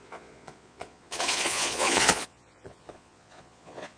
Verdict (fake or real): fake